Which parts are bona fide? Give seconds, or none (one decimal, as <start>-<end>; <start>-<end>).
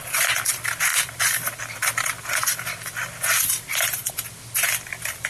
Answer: 0.0-5.3